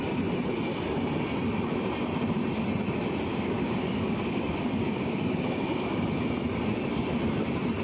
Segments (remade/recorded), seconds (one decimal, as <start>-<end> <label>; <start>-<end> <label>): 0.0-3.3 recorded; 3.3-6.2 remade; 6.2-7.8 recorded